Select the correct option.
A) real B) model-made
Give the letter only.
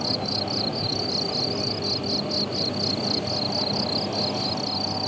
A